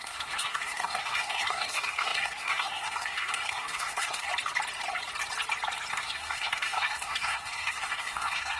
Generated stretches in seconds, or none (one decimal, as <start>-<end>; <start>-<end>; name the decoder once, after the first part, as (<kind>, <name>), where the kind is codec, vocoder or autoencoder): 0.0-4.3 (codec, SNAC); 5.9-8.6